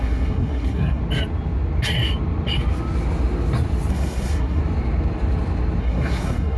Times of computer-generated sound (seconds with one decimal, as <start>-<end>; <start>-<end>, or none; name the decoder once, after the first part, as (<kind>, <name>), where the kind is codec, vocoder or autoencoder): 0.0-1.0 (codec, SNAC); 3.9-4.6; 5.8-6.6